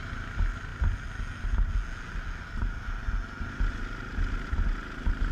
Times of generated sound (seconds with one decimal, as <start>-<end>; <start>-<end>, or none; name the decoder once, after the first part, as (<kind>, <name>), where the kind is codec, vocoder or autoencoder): none